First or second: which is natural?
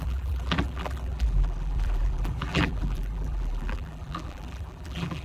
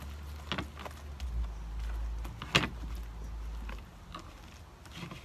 second